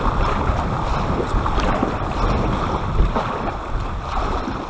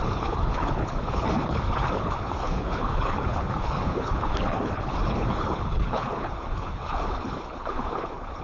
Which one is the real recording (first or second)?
first